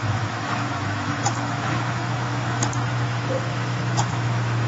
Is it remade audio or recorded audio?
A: remade